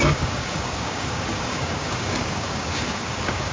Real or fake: fake